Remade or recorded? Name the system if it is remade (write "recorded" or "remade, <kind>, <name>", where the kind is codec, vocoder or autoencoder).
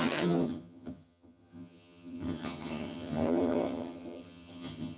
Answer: remade, vocoder, HiFi-GAN